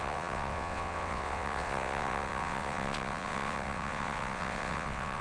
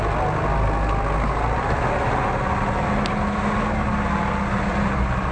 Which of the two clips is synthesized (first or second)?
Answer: first